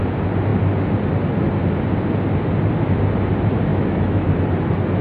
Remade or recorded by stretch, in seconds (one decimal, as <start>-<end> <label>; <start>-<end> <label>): 0.0-3.7 recorded; 3.7-4.3 remade; 4.3-5.0 recorded